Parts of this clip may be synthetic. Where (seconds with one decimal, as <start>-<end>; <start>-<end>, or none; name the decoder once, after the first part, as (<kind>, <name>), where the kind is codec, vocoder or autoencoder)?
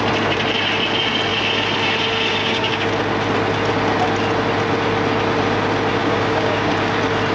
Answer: 2.4-2.9 (codec, DAC); 6.0-6.7